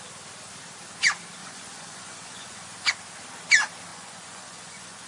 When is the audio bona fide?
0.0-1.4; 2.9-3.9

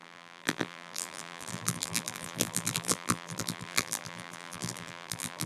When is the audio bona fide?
none

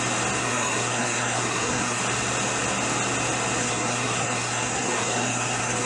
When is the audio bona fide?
0.0-0.4; 2.0-3.6

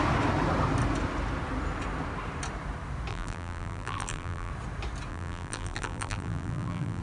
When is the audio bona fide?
0.0-3.1; 4.5-5.1